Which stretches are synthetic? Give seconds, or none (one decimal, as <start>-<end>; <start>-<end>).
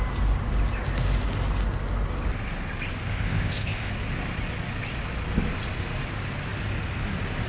3.1-3.9